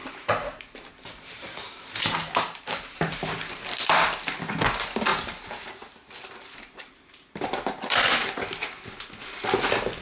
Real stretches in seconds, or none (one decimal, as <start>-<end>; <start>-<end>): 3.5-5.1; 7.4-10.0